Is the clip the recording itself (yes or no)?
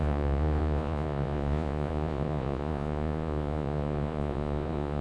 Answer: no